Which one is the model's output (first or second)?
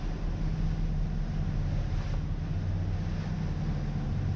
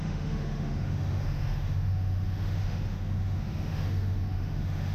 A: second